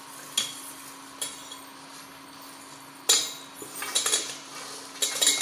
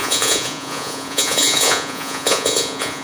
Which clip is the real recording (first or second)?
first